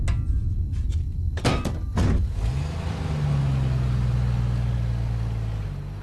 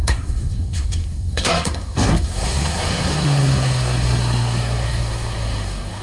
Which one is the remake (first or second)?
second